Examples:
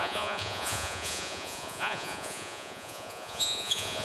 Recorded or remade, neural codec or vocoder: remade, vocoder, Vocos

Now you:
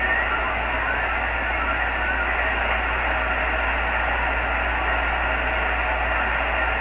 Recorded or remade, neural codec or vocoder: recorded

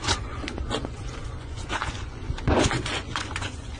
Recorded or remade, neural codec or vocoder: remade, vocoder, Vocos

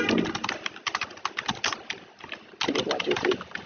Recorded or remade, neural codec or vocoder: recorded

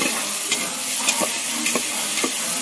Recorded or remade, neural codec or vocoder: recorded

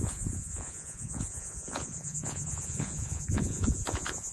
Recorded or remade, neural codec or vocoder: remade, vocoder, Vocos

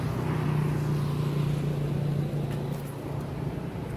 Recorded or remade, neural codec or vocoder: recorded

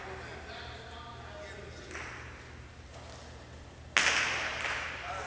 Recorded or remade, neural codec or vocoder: recorded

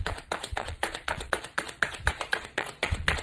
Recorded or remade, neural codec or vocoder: remade, vocoder, Vocos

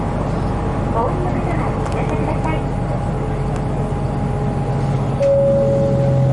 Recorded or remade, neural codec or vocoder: recorded